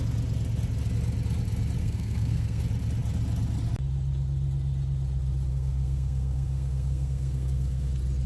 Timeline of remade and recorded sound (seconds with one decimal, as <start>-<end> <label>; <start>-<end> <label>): 0.0-1.8 recorded; 1.8-2.6 remade; 2.6-5.5 recorded; 5.5-7.9 remade; 7.9-8.3 recorded